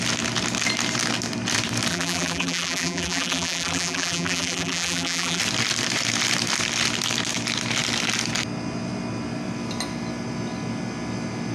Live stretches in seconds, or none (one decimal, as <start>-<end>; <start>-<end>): 0.0-1.9; 5.4-11.5